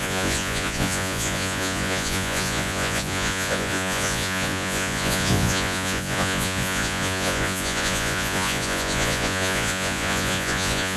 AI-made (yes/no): yes